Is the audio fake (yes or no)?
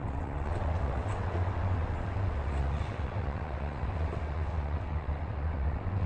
yes